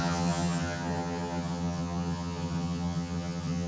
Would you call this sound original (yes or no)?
no